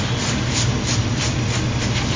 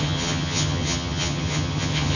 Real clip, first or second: first